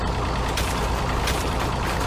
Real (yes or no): yes